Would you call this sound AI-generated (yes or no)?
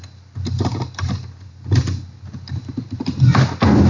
no